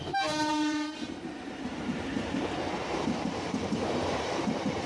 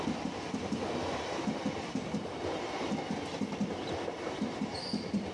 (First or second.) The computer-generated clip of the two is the first